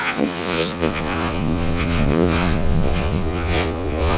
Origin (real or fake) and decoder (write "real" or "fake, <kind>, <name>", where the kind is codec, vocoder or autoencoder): fake, vocoder, Vocos